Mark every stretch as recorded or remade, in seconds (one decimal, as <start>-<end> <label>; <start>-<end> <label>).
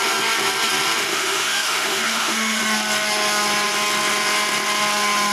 0.0-1.0 recorded; 1.0-2.6 remade; 2.6-5.3 recorded